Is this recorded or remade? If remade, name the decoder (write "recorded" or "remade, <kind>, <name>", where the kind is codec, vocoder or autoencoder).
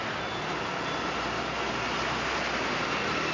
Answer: recorded